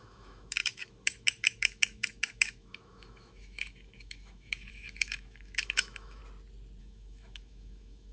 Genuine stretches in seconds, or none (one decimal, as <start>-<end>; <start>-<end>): 6.2-6.8